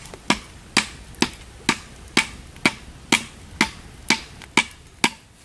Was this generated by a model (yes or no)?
no